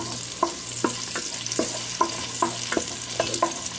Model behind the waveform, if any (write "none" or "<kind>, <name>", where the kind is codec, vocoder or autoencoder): none